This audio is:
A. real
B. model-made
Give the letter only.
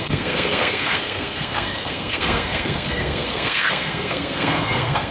B